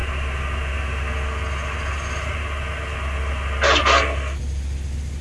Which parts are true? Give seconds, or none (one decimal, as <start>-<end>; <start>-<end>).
0.0-3.8; 4.4-5.2